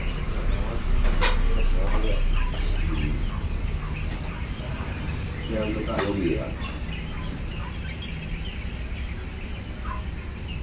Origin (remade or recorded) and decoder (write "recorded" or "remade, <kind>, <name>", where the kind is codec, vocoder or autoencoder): recorded